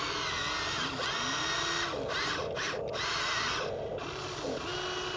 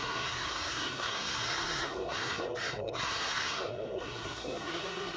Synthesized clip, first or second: second